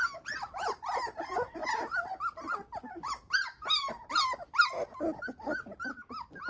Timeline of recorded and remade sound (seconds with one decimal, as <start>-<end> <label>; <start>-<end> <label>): 0.0-6.5 recorded